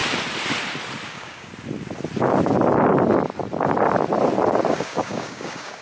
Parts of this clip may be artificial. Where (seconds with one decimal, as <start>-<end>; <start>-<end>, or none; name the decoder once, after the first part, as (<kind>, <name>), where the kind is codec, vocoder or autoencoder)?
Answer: 1.1-1.5 (codec, DAC); 4.7-5.8